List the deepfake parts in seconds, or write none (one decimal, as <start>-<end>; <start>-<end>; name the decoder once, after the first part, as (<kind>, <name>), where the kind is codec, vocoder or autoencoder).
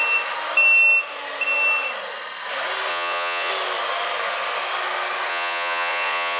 2.9-3.5 (vocoder, Vocos); 5.3-6.4